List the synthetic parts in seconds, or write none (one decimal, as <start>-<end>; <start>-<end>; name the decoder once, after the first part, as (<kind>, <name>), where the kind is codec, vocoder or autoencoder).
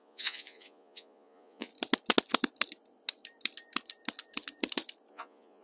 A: 0.0-1.7 (vocoder, Vocos); 5.1-5.6